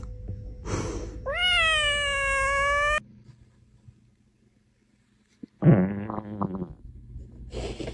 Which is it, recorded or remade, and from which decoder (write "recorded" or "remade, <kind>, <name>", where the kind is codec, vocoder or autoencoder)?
recorded